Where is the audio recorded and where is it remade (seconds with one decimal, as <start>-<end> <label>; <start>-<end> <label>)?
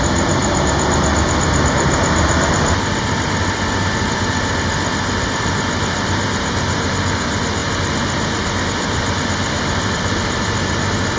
0.0-0.4 remade; 0.4-1.7 recorded; 1.7-7.6 remade; 7.6-8.6 recorded; 8.6-11.2 remade